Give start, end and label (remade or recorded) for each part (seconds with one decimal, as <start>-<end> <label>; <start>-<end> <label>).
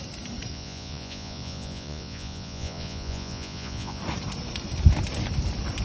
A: 0.0-0.5 recorded; 0.5-4.0 remade; 4.0-5.8 recorded